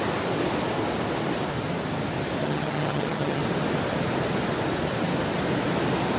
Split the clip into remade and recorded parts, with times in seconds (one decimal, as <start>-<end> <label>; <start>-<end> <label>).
0.0-2.4 recorded; 2.4-3.4 remade; 3.4-6.2 recorded

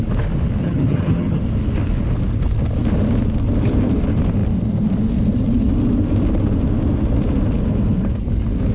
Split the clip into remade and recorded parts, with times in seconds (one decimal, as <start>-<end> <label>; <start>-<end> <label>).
0.0-0.6 recorded; 0.6-1.4 remade; 1.4-8.7 recorded

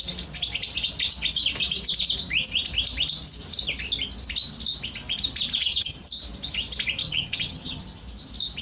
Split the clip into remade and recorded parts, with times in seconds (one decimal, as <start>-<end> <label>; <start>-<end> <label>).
0.0-5.6 recorded; 5.6-6.1 remade; 6.1-7.0 recorded; 7.0-7.8 remade; 7.8-8.6 recorded

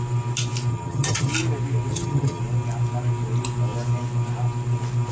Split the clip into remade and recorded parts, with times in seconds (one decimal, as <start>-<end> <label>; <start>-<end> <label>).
0.0-0.7 recorded; 0.7-1.3 remade; 1.3-1.9 recorded; 1.9-2.4 remade; 2.4-5.1 recorded

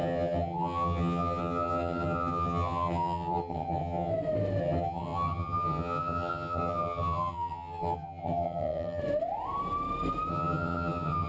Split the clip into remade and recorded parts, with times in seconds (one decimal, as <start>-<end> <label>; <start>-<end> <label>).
0.0-4.1 remade; 4.1-4.6 recorded; 4.6-9.0 remade; 9.0-10.3 recorded; 10.3-11.3 remade